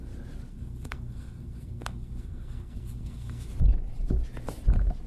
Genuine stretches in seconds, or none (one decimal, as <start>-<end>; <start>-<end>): 0.0-0.5; 3.5-5.1

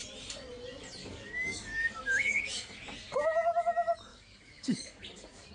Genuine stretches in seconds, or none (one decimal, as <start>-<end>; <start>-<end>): 0.0-1.0; 2.4-4.1